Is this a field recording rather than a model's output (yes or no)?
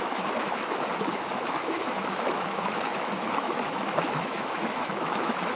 no